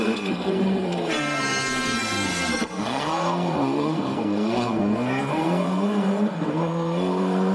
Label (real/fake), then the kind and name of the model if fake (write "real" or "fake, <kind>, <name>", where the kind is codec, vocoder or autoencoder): fake, codec, SNAC